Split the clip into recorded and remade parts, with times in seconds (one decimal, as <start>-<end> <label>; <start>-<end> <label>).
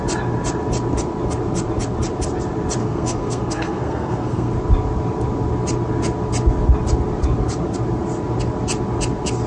0.0-2.8 recorded; 2.8-4.5 remade; 4.5-9.5 recorded